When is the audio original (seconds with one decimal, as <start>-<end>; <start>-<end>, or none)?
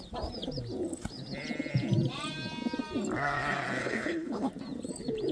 0.0-3.8; 4.5-5.3